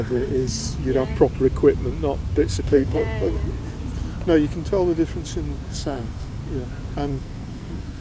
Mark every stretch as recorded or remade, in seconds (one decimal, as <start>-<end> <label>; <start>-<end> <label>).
0.0-0.6 remade; 0.6-2.6 recorded; 2.6-3.0 remade; 3.0-5.7 recorded; 5.7-6.4 remade; 6.4-7.1 recorded; 7.1-8.0 remade